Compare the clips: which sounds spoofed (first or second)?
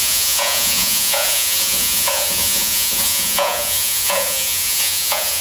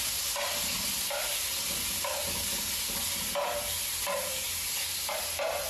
first